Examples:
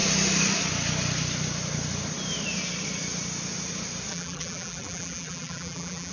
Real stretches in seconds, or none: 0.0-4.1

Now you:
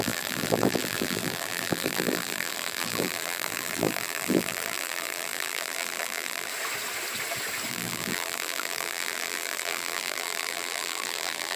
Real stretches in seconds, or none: 6.5-7.7

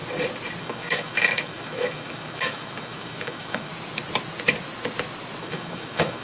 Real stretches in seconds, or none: 0.0-0.6; 3.7-5.4